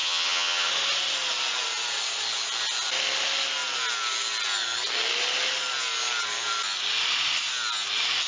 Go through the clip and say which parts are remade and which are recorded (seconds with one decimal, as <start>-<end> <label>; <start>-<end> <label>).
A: 0.0-0.7 remade; 0.7-8.3 recorded